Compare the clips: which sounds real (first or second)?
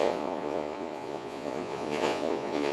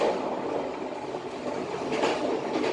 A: second